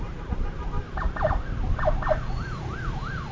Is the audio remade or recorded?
recorded